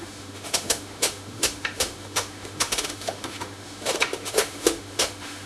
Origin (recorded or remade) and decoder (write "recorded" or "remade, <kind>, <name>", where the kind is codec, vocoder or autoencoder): remade, autoencoder, DAC-VAE